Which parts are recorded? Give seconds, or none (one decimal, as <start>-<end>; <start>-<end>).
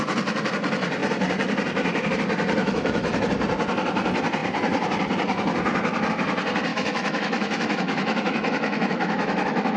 0.0-2.6; 3.2-6.7